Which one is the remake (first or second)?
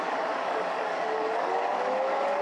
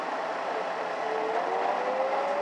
first